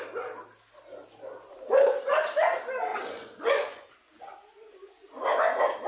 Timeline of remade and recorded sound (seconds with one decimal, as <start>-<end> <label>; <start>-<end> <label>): 0.0-2.9 recorded; 2.9-3.9 remade; 3.9-5.9 recorded